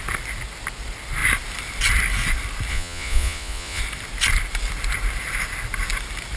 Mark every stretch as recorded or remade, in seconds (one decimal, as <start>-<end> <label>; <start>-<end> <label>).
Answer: 0.0-2.7 recorded; 2.7-3.8 remade; 3.8-6.4 recorded